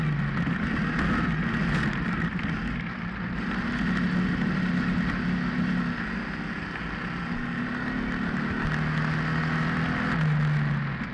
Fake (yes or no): no